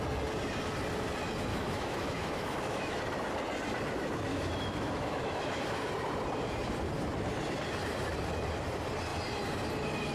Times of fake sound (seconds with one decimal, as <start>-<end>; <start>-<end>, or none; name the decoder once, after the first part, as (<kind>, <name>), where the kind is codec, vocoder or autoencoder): 1.5-3.0 (autoencoder, DAC-VAE); 4.3-5.9